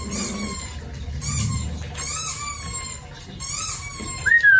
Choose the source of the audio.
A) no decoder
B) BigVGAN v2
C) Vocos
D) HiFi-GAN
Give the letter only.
A